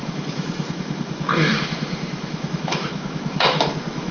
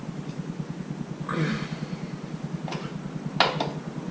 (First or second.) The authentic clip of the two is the second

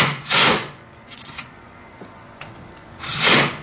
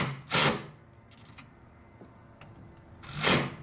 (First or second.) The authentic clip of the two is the second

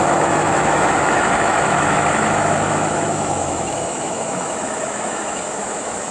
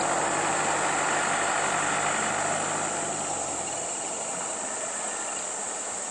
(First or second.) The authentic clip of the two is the second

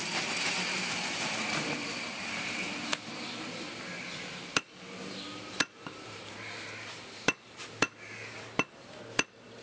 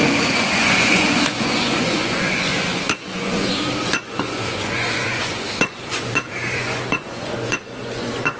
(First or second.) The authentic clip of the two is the first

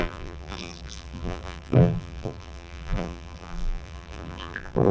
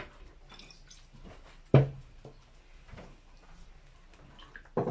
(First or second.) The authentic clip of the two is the second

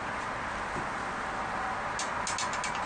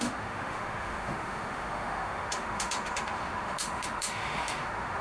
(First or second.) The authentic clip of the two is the first